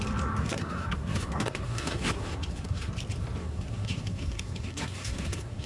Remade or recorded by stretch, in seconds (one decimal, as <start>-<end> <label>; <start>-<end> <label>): 0.0-0.4 recorded; 0.4-2.9 remade; 2.9-3.4 recorded; 3.4-5.7 remade

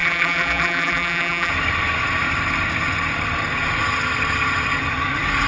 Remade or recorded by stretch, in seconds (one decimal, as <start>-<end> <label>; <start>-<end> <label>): 0.0-1.5 remade; 1.5-5.5 recorded

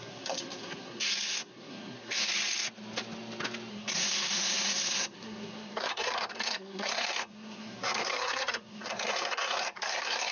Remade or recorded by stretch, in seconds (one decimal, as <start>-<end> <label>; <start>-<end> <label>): 0.0-2.3 remade; 2.3-3.7 recorded; 3.7-10.3 remade

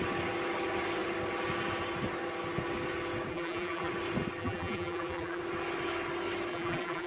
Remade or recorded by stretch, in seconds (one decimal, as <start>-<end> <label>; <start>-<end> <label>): 0.0-3.3 recorded; 3.3-3.9 remade; 3.9-4.4 recorded; 4.4-5.4 remade; 5.4-6.5 recorded; 6.5-7.1 remade

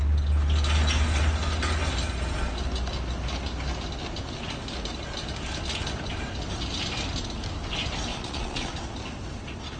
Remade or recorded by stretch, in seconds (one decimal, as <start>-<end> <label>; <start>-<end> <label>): 0.0-8.1 recorded; 8.1-8.7 remade; 8.7-9.8 recorded

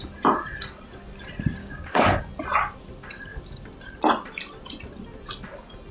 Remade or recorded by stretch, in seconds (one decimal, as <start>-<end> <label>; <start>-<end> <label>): 0.0-1.6 recorded; 1.6-2.2 remade; 2.2-5.9 recorded

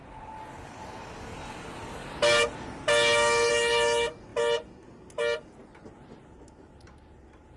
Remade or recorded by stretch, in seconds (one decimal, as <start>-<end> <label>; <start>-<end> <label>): 0.0-7.6 recorded